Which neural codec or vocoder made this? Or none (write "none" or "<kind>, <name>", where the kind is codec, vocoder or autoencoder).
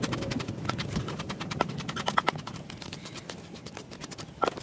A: none